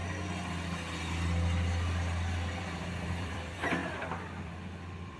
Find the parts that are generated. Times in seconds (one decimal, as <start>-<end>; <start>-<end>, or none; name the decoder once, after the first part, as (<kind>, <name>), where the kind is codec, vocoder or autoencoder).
2.6-5.2 (vocoder, BigVGAN v2)